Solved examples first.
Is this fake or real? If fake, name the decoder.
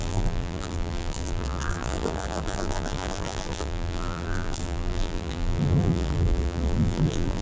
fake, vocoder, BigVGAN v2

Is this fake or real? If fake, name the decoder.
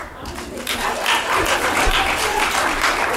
fake, vocoder, BigVGAN v2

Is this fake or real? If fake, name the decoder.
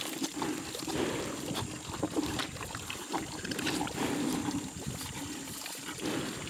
real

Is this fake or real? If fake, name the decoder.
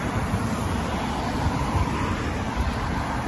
fake, vocoder, BigVGAN v2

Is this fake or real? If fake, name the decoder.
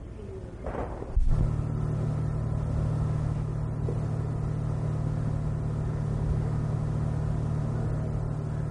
real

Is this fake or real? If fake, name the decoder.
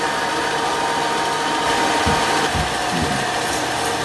real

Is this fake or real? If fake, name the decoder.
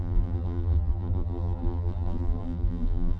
fake, vocoder, BigVGAN v2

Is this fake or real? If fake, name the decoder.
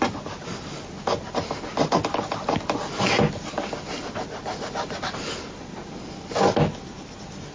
real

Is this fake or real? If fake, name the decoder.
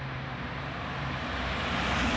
fake, vocoder, BigVGAN v2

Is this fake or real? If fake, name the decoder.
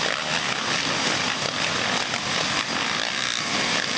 real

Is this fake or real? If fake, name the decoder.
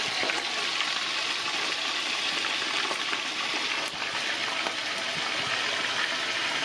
real